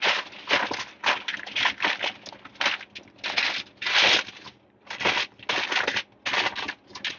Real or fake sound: real